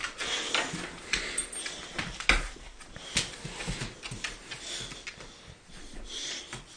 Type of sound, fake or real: real